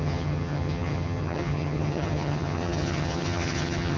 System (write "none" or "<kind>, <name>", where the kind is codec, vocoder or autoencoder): vocoder, HiFi-GAN